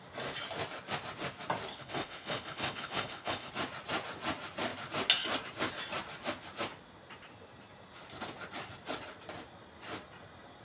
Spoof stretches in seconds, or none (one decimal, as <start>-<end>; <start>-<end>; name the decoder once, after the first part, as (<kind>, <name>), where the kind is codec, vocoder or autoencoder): 1.7-3.5 (codec, HILCodec)